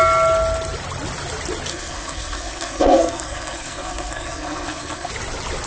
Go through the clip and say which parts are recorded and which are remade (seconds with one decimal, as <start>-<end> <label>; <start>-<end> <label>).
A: 0.0-1.7 recorded; 1.7-5.1 remade; 5.1-5.7 recorded